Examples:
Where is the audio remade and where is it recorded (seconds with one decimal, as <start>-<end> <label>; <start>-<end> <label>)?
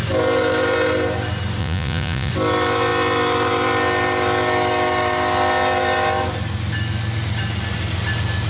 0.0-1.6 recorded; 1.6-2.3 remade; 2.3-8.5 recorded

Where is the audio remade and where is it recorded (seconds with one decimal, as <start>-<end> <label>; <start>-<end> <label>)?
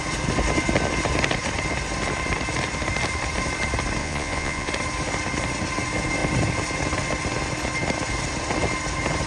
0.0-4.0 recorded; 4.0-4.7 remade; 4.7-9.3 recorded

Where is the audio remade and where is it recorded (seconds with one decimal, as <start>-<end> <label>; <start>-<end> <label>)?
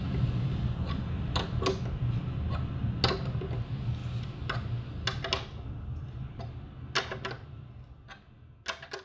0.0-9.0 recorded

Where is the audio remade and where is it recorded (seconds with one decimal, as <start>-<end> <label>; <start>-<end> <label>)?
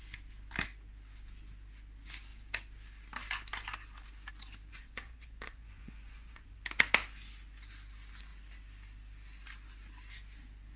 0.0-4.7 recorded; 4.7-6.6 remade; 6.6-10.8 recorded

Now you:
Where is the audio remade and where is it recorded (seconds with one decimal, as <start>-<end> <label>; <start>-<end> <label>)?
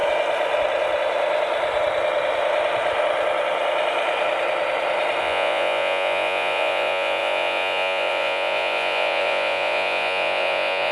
0.0-5.2 recorded; 5.2-10.9 remade